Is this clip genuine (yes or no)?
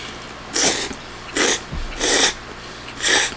yes